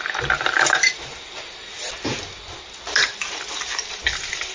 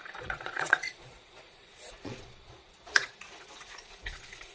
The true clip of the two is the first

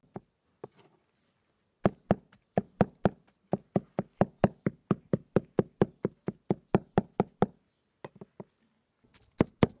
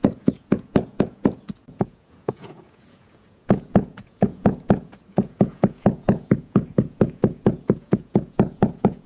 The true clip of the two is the first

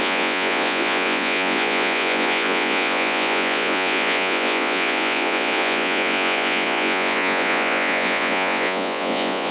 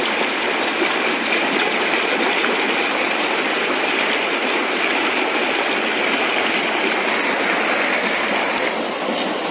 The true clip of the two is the second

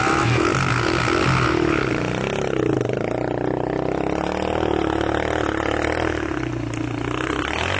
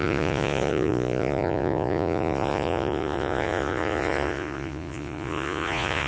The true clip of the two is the first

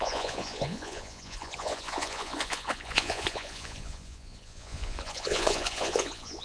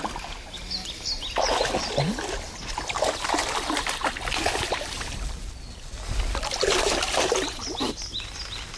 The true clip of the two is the second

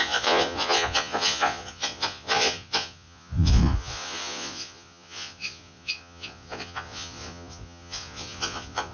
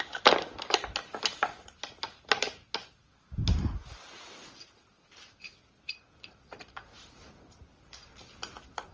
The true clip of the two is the second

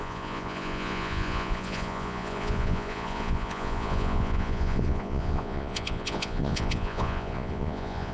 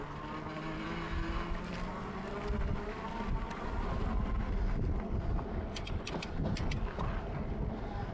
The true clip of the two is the second